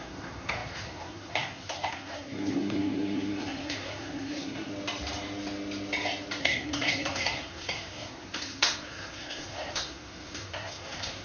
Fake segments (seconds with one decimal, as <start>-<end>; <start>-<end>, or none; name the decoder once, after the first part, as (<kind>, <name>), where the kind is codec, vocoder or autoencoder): 0.0-4.7 (codec, SNAC); 6.4-11.2